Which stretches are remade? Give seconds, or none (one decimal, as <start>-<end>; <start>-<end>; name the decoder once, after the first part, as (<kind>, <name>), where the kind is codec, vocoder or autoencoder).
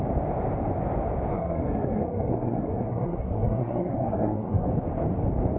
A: 1.3-4.7 (codec, SNAC)